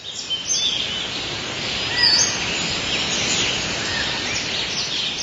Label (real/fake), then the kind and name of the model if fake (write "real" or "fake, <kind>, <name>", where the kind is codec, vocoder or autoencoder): real